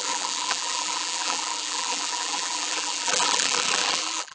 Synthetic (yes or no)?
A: yes